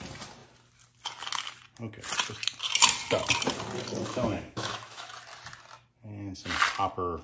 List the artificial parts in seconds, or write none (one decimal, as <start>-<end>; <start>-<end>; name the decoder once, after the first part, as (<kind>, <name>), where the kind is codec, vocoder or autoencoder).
4.1-5.1 (autoencoder, DAC-VAE)